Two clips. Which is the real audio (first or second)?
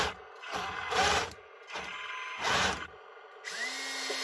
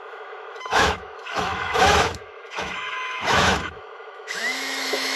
first